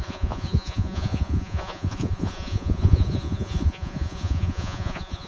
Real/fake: fake